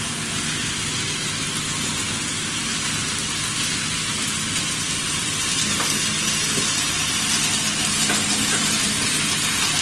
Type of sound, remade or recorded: recorded